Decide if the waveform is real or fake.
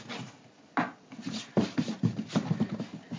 real